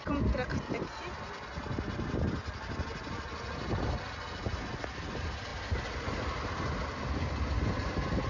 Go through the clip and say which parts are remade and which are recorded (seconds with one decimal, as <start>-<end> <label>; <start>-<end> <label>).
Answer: 0.0-8.3 recorded